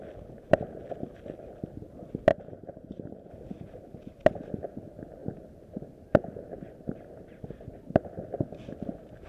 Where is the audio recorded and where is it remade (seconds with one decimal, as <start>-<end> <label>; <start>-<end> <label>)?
0.0-2.3 recorded; 2.3-3.3 remade; 3.3-9.3 recorded